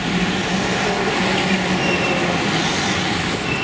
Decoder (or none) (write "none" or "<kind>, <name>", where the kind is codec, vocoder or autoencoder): none